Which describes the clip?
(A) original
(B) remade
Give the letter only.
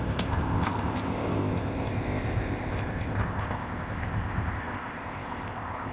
B